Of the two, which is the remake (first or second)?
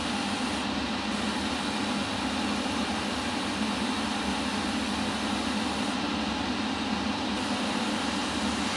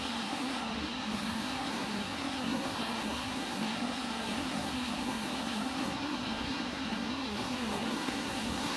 second